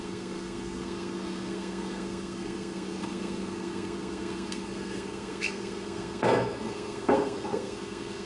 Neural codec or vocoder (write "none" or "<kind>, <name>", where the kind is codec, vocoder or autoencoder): codec, SNAC